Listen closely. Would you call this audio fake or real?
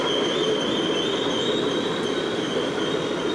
real